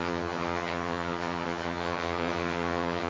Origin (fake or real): fake